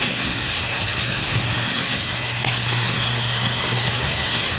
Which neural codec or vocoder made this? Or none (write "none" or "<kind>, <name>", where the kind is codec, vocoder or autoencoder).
codec, SNAC